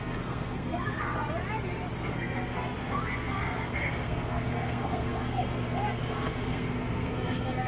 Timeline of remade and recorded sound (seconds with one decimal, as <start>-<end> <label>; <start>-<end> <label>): 0.0-1.4 remade; 1.4-2.0 recorded; 2.0-7.7 remade